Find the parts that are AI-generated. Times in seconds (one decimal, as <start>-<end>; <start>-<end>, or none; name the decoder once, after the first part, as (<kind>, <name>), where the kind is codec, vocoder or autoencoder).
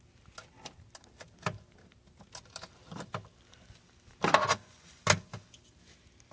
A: 4.5-5.0 (vocoder, Vocos)